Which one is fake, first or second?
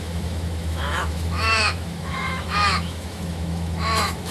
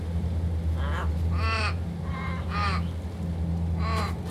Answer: first